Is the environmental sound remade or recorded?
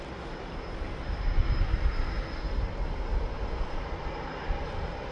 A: recorded